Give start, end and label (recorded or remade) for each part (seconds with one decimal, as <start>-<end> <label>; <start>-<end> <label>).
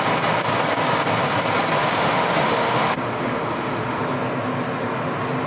0.0-1.8 recorded; 1.8-4.0 remade; 4.0-5.5 recorded